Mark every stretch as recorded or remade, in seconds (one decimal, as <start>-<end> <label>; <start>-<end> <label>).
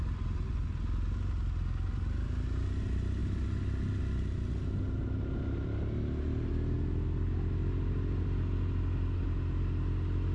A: 0.0-10.3 recorded